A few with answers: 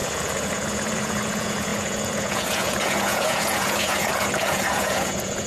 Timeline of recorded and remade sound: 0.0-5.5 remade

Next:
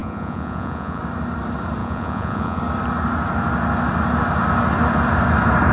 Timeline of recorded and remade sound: 0.0-1.0 remade; 1.0-1.8 recorded; 1.8-2.6 remade; 2.6-5.7 recorded

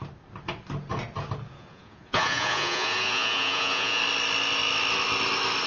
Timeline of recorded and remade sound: 0.0-1.5 recorded; 1.5-4.0 remade; 4.0-5.7 recorded

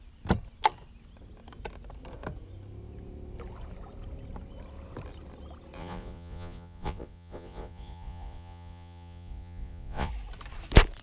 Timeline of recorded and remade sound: 0.0-5.8 recorded; 5.8-10.1 remade; 10.1-11.0 recorded

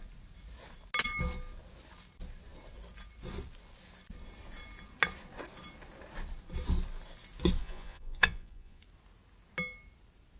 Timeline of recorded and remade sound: 0.0-7.6 recorded; 7.6-8.8 remade; 8.8-10.4 recorded

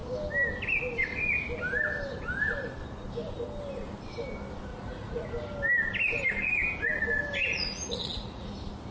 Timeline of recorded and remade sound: 0.0-4.7 recorded; 4.7-5.3 remade; 5.3-7.5 recorded; 7.5-8.5 remade; 8.5-8.9 recorded

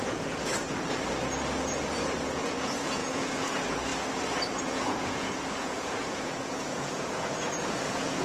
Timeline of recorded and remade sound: 0.0-0.5 remade; 0.5-2.2 recorded; 2.2-3.9 remade; 3.9-4.6 recorded; 4.6-8.2 remade